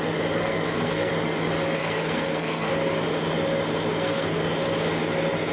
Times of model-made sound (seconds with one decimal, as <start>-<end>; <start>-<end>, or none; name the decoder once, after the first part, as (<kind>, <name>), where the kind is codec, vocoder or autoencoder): 0.4-1.1 (codec, SNAC); 1.8-2.7; 3.9-4.4